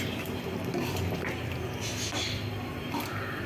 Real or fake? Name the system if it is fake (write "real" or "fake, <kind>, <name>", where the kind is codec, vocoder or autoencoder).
real